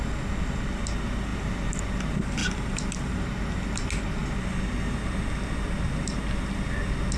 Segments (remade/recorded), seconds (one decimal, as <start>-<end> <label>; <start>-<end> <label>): 0.0-2.4 recorded; 2.4-3.3 remade; 3.3-7.2 recorded